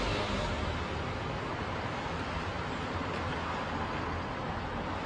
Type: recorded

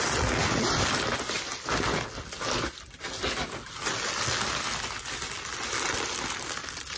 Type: recorded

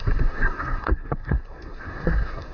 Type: remade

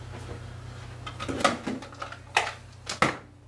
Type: recorded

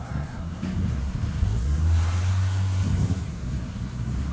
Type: remade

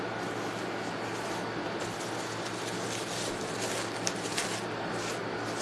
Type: recorded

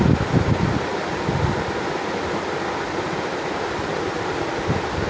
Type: recorded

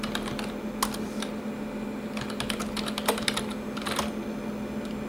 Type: recorded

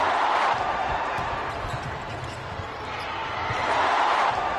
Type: recorded